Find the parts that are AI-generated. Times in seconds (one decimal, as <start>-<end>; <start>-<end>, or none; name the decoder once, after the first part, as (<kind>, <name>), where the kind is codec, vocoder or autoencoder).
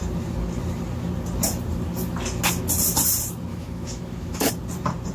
3.5-4.5 (autoencoder, DAC-VAE)